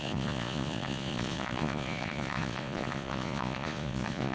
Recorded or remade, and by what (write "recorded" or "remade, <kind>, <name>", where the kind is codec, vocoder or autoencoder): remade, vocoder, Vocos